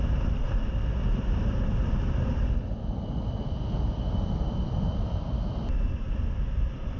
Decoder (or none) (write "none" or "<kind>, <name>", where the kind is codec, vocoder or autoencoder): none